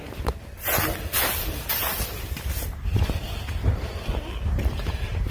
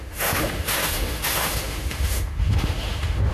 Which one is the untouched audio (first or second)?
first